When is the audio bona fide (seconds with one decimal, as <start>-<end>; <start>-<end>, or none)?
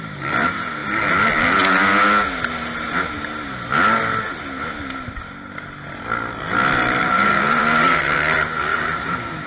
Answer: 0.0-7.0; 8.0-8.7